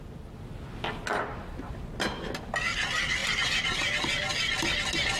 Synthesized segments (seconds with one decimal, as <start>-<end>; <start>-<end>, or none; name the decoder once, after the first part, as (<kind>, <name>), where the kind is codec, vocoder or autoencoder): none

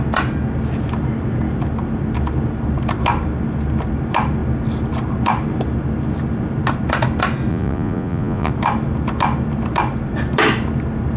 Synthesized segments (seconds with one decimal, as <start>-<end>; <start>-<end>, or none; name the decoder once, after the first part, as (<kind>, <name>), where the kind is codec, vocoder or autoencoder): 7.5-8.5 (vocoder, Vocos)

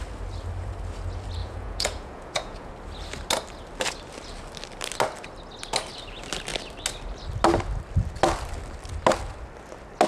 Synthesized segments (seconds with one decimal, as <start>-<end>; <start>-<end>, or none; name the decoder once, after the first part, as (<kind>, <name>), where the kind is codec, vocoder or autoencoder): 1.4-2.7 (vocoder, Vocos)

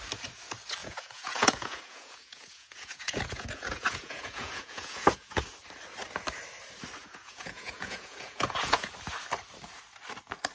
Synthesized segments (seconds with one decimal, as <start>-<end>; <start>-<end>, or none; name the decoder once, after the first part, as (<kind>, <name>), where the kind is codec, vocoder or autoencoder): 0.8-5.4 (vocoder, Vocos); 7.0-8.9

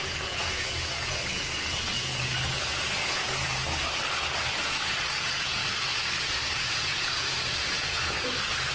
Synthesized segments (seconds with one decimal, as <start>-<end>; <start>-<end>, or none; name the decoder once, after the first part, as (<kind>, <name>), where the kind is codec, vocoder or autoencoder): 0.0-3.6 (vocoder, Vocos); 4.6-5.6; 6.2-8.7

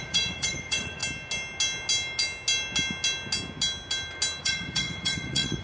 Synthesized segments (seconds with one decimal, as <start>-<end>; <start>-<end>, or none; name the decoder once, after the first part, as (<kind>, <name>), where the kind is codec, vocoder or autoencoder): 0.0-1.0 (vocoder, Vocos); 4.4-5.6

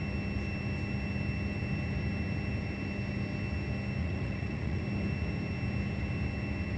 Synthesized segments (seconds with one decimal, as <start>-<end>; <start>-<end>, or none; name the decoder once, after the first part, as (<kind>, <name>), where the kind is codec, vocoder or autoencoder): 4.0-4.8 (vocoder, Vocos)

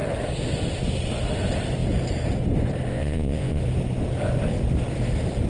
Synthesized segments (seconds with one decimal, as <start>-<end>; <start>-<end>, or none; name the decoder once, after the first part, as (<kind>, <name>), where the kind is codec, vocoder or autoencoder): 2.9-3.6 (vocoder, Vocos)